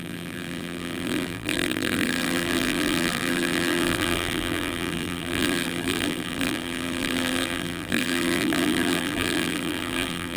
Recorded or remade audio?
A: remade